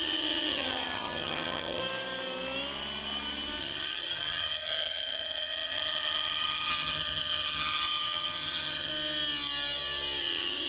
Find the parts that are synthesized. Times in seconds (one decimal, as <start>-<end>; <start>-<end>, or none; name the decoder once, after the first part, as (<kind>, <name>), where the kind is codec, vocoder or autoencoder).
0.0-1.8 (vocoder, HiFi-GAN); 3.6-8.9; 10.2-10.7